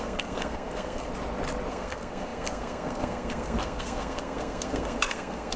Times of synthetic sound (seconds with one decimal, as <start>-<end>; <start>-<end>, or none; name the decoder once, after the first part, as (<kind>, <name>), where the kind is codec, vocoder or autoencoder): 0.0-1.1 (codec, SNAC); 1.7-5.6